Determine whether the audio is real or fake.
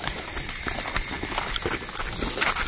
real